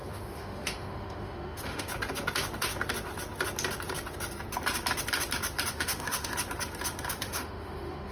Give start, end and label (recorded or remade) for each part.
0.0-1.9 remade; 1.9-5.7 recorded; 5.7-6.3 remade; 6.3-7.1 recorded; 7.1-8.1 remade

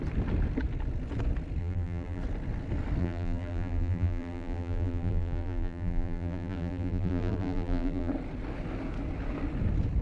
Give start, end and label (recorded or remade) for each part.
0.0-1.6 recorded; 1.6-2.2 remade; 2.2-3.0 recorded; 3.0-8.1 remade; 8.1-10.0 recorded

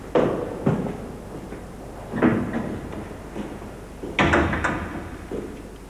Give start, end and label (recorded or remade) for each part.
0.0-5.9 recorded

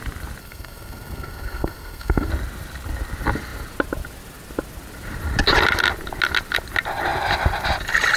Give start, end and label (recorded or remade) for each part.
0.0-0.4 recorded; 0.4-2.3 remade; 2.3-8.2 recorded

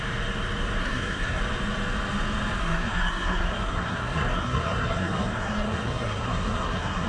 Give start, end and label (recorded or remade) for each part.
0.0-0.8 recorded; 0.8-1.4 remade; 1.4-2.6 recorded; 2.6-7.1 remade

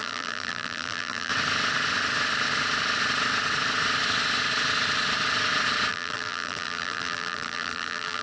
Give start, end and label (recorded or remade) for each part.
0.0-1.3 remade; 1.3-5.9 recorded; 5.9-8.2 remade

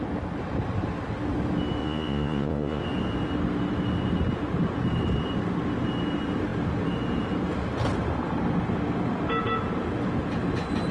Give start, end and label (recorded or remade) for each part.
0.0-1.8 recorded; 1.8-2.8 remade; 2.8-10.9 recorded

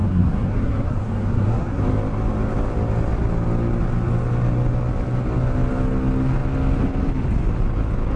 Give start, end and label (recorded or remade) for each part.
0.0-1.8 remade; 1.8-8.2 recorded